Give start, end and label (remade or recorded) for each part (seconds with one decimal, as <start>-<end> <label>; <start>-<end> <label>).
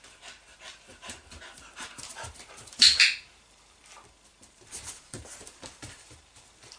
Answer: 0.0-0.9 recorded; 0.9-3.8 remade; 3.8-4.3 recorded; 4.3-6.8 remade